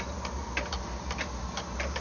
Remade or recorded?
recorded